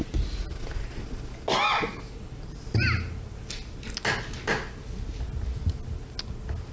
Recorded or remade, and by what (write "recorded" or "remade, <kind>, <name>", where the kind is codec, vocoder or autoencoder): recorded